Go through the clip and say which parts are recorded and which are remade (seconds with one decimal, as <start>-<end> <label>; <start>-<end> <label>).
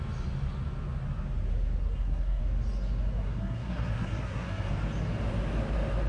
0.0-1.8 recorded; 1.8-2.4 remade; 2.4-3.2 recorded; 3.2-4.7 remade; 4.7-6.1 recorded